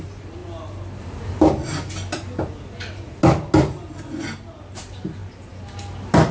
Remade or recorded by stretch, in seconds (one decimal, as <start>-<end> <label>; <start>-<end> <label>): 0.0-6.3 recorded